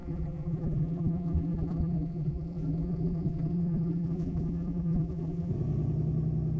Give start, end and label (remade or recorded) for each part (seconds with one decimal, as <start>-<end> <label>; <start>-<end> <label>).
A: 0.0-5.5 remade; 5.5-6.6 recorded